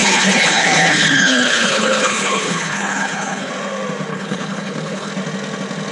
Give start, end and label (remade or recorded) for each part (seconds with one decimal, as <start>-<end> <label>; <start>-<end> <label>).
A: 0.0-3.5 remade; 3.5-4.1 recorded; 4.1-5.1 remade; 5.1-5.9 recorded